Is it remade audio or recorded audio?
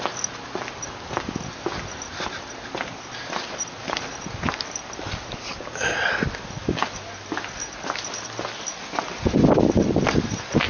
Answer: recorded